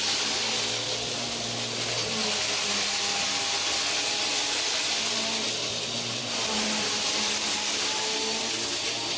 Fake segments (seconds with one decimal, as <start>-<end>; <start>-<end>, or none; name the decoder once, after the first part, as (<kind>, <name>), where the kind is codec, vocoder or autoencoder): none